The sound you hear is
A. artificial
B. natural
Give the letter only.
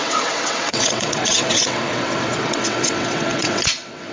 A